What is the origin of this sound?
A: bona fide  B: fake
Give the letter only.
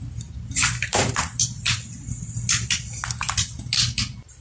B